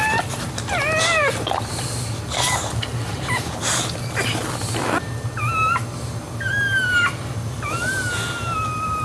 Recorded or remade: recorded